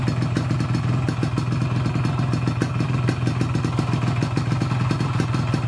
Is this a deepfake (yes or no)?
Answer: no